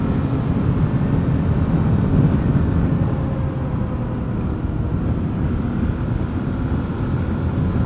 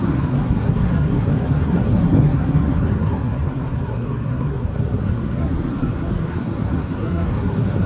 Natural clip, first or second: first